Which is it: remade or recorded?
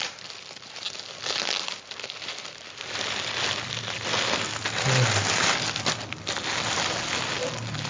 recorded